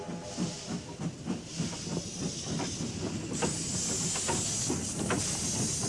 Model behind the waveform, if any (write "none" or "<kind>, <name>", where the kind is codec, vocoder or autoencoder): none